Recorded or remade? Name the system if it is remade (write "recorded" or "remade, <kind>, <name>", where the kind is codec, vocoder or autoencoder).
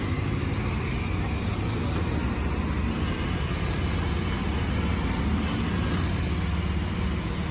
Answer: recorded